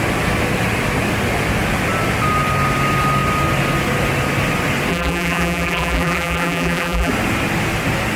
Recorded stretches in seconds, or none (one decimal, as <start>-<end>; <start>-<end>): 0.0-4.9; 7.1-8.2